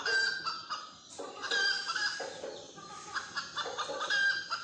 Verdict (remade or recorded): recorded